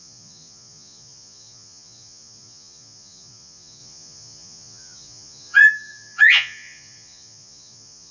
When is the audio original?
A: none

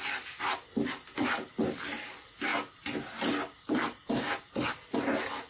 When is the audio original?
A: 0.0-5.5

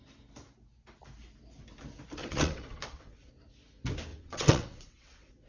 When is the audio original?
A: 0.0-2.2; 3.3-4.1